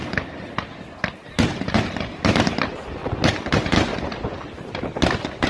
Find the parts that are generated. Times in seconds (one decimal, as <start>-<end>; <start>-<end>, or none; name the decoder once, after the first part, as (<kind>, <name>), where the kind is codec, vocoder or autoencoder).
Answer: none